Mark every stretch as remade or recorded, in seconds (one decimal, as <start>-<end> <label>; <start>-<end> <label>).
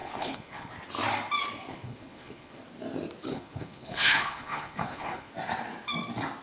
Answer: 0.0-0.7 remade; 0.7-1.7 recorded; 1.7-2.6 remade; 2.6-3.3 recorded; 3.3-5.3 remade; 5.3-6.4 recorded